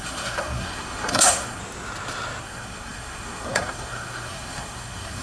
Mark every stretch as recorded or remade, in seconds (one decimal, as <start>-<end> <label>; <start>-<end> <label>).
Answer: 0.0-1.6 remade; 1.6-2.4 recorded; 2.4-5.2 remade